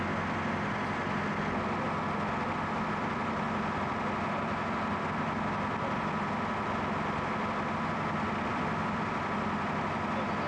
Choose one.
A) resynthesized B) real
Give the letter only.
B